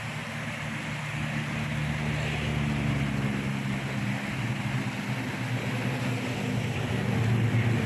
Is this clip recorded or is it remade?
recorded